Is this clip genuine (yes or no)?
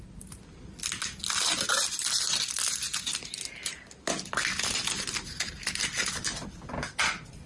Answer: yes